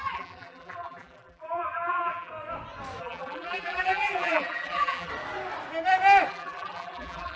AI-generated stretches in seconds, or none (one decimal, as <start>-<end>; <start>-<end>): 0.0-2.3; 3.0-5.1; 6.3-7.4